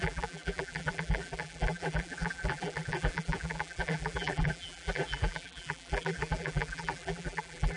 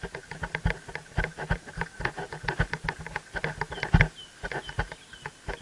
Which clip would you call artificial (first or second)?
first